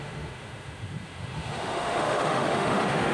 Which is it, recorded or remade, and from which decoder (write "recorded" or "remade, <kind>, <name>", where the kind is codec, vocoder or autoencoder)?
remade, autoencoder, DAC-VAE